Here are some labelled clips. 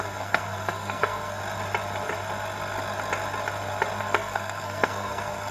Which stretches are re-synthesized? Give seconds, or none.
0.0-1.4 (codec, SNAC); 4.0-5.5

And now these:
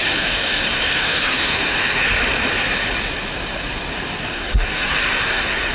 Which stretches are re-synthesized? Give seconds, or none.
0.0-2.1 (codec, SNAC); 4.3-5.7

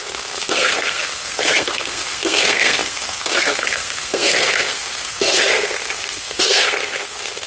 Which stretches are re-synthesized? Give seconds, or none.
0.0-7.5 (codec, SNAC)

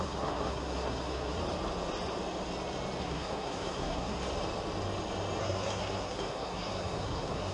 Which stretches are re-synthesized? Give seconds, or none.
0.0-1.4 (codec, SNAC); 3.0-4.2; 5.4-7.5

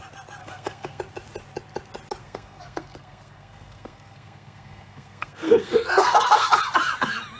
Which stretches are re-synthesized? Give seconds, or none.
0.4-1.0 (codec, SNAC); 2.2-6.6

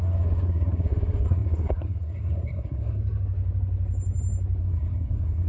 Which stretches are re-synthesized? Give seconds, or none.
0.0-3.0 (codec, SNAC); 4.6-5.5

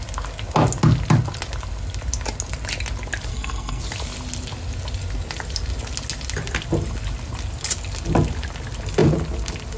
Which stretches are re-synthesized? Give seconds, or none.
3.3-3.8 (codec, SNAC)

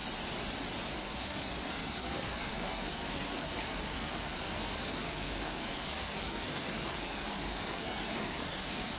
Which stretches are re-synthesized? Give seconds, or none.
0.9-9.0 (codec, SNAC)